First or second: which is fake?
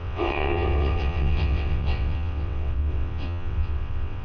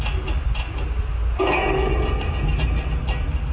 first